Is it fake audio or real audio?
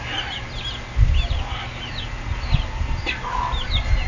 real